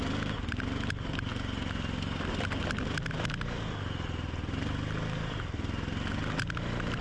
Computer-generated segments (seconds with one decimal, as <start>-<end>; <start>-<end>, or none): none